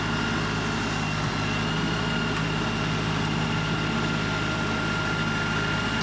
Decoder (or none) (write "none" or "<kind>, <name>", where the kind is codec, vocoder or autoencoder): none